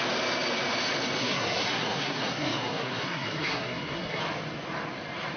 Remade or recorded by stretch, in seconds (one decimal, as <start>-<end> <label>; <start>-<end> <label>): 0.0-1.2 recorded; 1.2-4.2 remade; 4.2-5.4 recorded

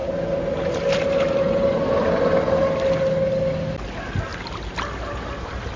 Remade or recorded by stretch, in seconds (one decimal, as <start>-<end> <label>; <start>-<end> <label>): 0.0-5.8 recorded

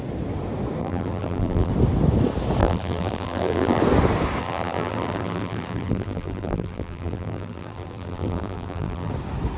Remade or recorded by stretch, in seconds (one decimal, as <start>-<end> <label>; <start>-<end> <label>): 0.0-0.8 recorded; 0.8-1.7 remade; 1.7-2.6 recorded; 2.6-3.8 remade; 3.8-4.4 recorded; 4.4-9.1 remade; 9.1-9.6 recorded

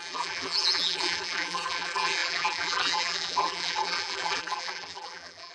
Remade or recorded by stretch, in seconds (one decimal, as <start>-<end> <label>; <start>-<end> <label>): 0.0-5.5 remade

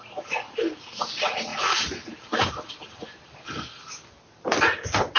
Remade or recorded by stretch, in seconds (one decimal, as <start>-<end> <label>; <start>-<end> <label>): 0.0-5.2 recorded